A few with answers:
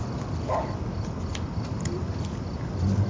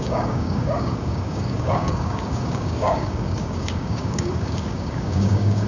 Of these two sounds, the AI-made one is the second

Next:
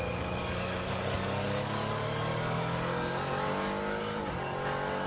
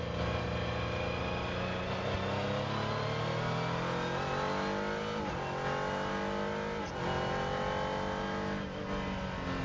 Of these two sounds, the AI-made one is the first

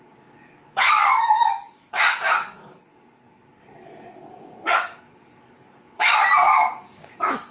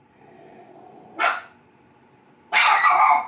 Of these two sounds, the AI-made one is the first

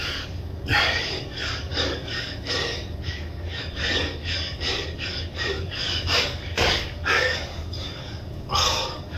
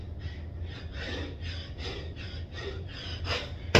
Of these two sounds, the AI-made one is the first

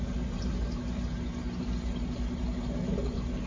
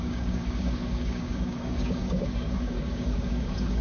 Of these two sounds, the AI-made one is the second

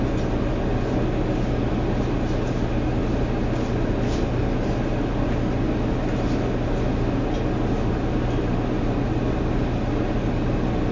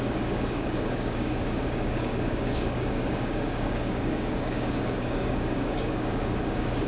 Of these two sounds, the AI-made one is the second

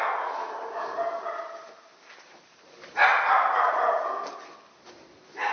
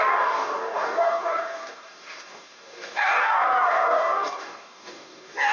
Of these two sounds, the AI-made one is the second